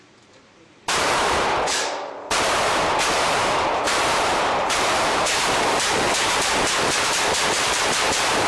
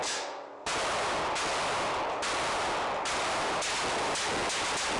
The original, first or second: second